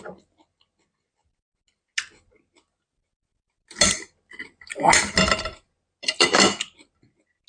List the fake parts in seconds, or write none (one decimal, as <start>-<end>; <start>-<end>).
none

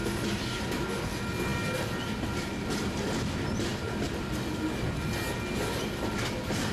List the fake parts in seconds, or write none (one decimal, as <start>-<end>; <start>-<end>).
none

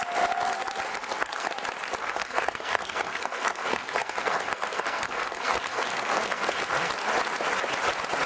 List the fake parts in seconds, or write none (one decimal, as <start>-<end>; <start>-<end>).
0.9-1.5; 2.0-6.9